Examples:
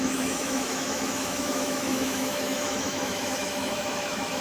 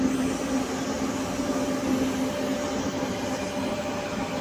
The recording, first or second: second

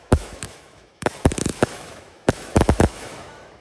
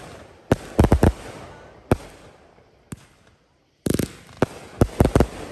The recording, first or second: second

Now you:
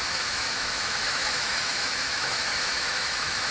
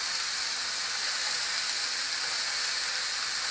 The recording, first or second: second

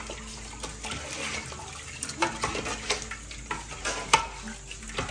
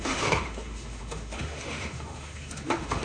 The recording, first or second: first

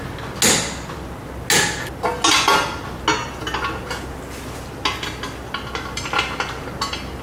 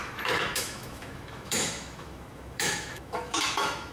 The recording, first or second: first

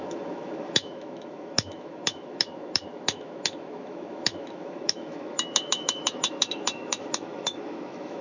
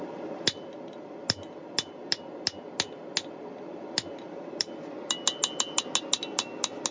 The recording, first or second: second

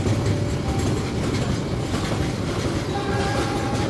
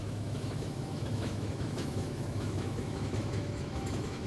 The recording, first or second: first